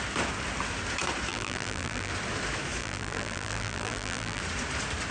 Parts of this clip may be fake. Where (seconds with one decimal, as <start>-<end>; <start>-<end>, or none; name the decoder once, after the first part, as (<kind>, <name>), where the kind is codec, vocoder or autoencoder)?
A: 1.3-2.1 (vocoder, BigVGAN v2); 2.8-4.4

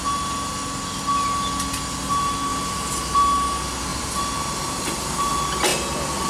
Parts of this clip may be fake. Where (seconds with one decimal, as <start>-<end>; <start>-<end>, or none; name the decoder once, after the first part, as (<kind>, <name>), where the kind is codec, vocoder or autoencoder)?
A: 2.5-3.2 (vocoder, BigVGAN v2); 3.9-5.3

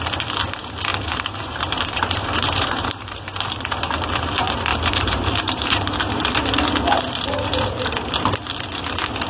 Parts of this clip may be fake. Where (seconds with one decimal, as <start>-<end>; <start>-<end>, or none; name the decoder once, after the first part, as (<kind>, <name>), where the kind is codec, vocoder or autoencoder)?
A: 0.9-3.7 (vocoder, BigVGAN v2); 4.7-6.3